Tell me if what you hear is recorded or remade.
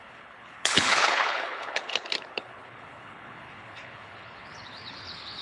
remade